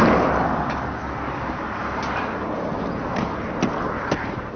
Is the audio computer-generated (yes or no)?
no